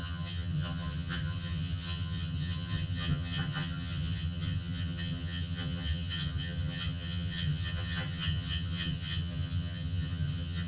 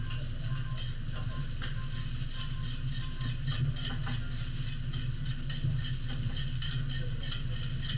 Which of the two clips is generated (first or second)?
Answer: first